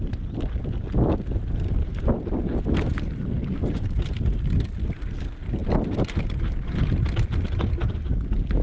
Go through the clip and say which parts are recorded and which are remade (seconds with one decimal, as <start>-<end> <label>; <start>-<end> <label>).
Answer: 0.0-8.6 recorded